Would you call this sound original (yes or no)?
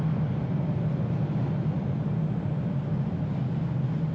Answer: yes